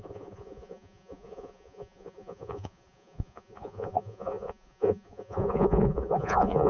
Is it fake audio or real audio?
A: fake